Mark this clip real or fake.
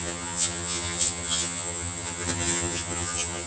fake